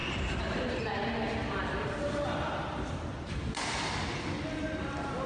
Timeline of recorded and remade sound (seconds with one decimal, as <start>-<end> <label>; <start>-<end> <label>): 0.0-1.4 recorded; 1.4-3.5 remade; 3.5-5.3 recorded